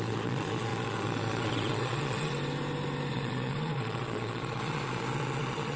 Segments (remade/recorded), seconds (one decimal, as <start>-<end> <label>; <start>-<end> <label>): 0.0-2.3 remade; 2.3-3.1 recorded; 3.1-5.8 remade